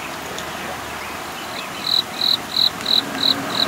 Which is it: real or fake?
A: real